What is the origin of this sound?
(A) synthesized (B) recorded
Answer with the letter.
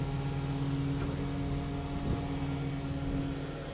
B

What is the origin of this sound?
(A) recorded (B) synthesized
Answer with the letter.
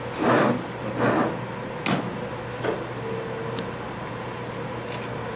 A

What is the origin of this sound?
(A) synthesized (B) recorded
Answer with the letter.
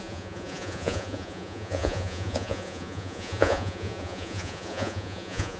A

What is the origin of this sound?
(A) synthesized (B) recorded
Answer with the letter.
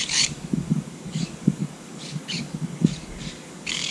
A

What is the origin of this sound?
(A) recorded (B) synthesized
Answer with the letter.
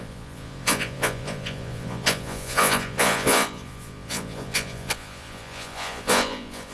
B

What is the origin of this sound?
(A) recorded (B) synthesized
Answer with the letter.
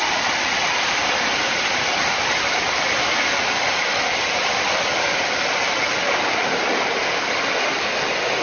A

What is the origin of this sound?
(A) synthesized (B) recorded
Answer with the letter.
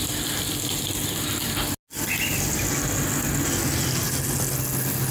B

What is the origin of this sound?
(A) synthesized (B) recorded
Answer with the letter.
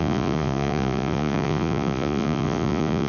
A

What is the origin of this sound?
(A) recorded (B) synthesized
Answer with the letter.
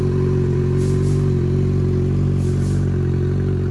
A